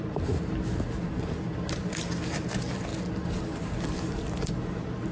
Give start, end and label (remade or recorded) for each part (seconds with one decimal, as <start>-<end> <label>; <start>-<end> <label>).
0.0-5.1 recorded